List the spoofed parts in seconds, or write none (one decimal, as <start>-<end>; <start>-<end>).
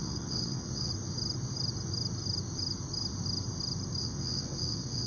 0.0-0.9; 4.0-5.1